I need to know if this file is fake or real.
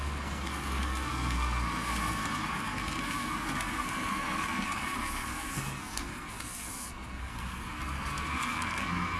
fake